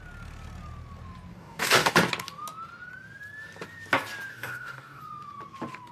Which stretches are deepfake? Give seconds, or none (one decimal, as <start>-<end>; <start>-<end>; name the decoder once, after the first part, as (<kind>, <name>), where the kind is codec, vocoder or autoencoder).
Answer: 1.3-1.9 (codec, DAC); 4.3-5.0